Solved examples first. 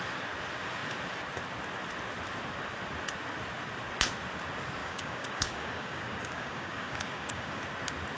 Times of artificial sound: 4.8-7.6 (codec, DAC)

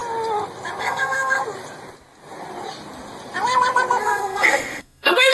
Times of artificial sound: 0.8-1.4 (codec, SNAC); 4.0-5.3

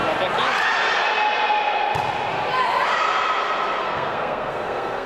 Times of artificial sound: 3.8-5.1 (codec, SNAC)

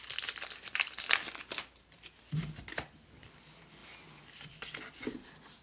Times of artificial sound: none

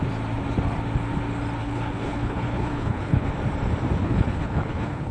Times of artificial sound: 1.6-3.3 (codec, HILCodec); 4.0-5.1

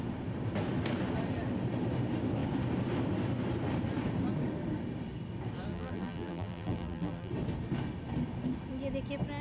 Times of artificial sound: 5.7-7.3 (vocoder, BigVGAN v2)

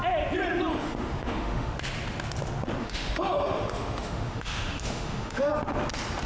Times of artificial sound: 0.7-1.7 (autoencoder, DAC-VAE); 2.8-5.5

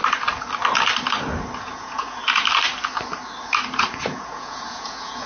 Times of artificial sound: 1.6-2.2 (vocoder, Vocos); 3.8-5.3